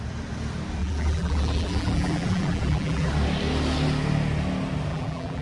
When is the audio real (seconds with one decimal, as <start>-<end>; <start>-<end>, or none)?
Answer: 0.0-0.8; 3.1-4.9